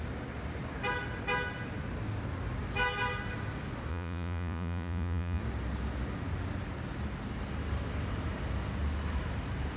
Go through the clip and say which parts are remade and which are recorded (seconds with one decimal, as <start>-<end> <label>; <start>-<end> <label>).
0.0-3.9 recorded; 3.9-5.4 remade; 5.4-9.8 recorded

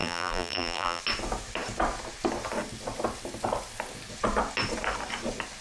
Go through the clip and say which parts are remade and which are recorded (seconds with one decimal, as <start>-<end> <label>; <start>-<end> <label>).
0.0-1.0 remade; 1.0-5.6 recorded